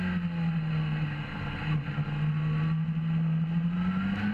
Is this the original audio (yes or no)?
yes